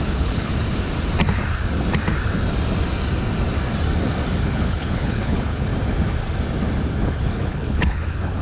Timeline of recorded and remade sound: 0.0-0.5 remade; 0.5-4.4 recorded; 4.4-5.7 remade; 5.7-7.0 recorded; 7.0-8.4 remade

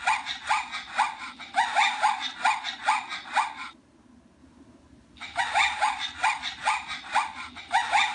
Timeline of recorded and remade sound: 0.0-8.1 recorded